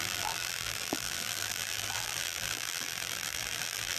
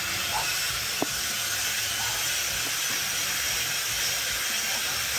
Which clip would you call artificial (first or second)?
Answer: first